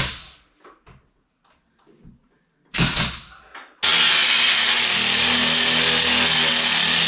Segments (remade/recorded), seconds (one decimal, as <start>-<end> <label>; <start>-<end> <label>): 0.0-7.1 recorded